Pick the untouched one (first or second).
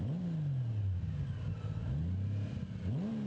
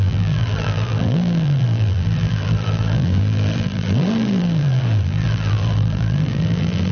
first